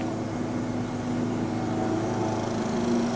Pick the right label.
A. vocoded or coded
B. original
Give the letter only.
B